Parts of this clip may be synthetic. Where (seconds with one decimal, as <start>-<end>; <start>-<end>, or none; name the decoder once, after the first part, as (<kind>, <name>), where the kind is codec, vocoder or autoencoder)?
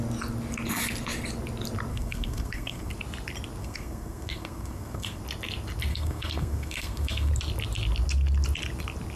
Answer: 1.9-2.9 (codec, SNAC); 3.6-5.2; 5.9-7.3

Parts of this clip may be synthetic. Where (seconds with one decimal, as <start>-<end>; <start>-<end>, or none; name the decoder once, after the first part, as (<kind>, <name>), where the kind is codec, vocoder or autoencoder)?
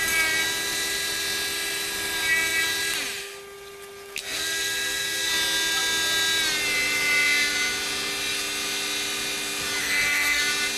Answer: 4.2-5.3 (codec, SNAC); 9.8-10.4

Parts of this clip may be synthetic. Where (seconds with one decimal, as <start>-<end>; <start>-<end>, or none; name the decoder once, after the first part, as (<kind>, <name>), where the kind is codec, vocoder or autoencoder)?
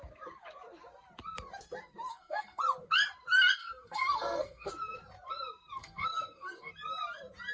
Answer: 2.1-2.6 (codec, SNAC); 3.6-4.7; 5.8-6.7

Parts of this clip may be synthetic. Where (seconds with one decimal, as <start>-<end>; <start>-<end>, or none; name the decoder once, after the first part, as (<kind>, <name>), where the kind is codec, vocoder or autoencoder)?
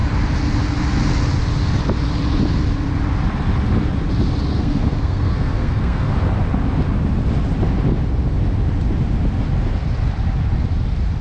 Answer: 4.5-6.1 (codec, SNAC)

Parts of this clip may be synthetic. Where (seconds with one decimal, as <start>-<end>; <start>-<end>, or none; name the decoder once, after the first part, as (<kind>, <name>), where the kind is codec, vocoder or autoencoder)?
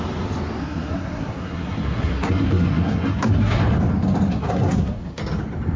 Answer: 0.6-3.6 (codec, SNAC); 4.3-5.2